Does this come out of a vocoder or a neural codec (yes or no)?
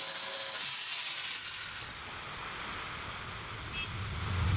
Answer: no